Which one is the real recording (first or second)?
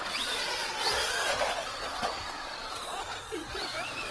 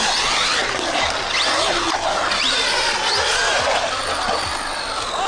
second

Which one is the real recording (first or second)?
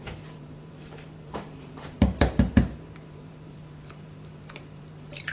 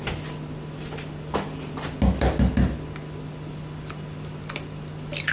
second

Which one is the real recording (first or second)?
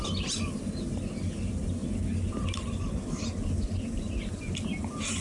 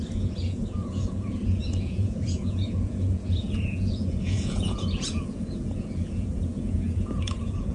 first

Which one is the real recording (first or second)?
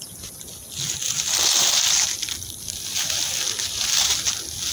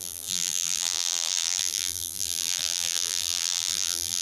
first